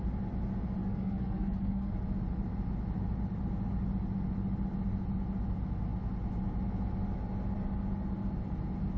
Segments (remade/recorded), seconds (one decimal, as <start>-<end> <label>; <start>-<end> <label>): 0.0-0.8 recorded; 0.8-1.9 remade; 1.9-9.0 recorded